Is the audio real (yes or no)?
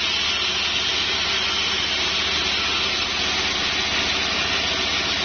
yes